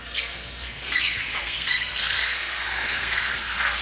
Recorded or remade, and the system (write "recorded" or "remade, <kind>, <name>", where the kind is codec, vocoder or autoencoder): remade, codec, SNAC